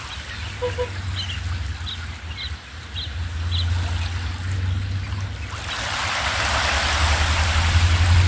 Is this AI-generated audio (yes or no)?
no